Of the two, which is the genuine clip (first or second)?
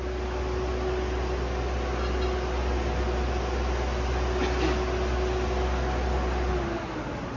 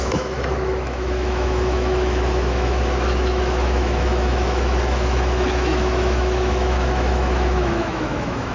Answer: first